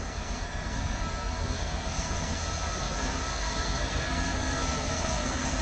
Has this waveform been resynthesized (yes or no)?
yes